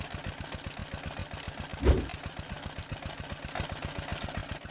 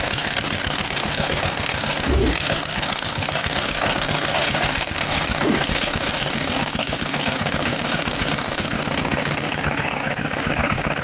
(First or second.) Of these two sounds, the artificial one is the second